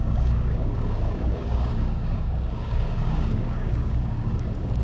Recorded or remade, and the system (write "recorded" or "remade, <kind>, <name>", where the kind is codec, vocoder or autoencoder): remade, codec, DAC